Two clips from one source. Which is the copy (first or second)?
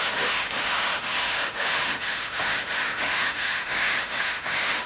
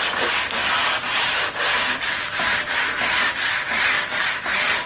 first